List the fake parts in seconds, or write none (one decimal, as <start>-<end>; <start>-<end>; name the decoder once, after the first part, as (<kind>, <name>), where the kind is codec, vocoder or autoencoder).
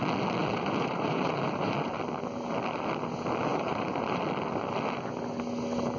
0.4-1.9 (vocoder, BigVGAN v2); 3.5-4.2